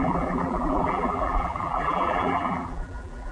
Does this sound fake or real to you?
fake